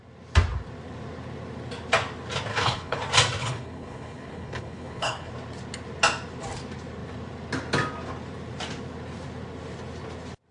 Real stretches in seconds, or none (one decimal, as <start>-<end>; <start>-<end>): 0.0-2.5; 3.0-3.4; 5.3-10.5